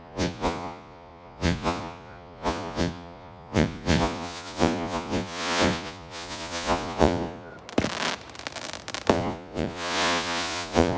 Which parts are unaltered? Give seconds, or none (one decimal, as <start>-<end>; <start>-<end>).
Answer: 7.5-9.1